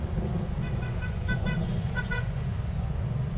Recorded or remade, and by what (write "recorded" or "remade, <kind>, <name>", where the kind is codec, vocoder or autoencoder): remade, vocoder, Vocos